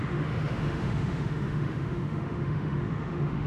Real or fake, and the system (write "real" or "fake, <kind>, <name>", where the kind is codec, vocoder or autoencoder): fake, autoencoder, DAC-VAE